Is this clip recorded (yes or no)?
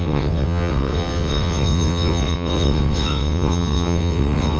no